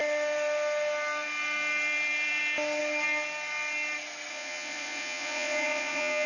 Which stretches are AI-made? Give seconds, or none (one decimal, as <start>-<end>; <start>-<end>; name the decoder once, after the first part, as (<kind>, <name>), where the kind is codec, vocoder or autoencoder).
4.3-6.3 (vocoder, Vocos)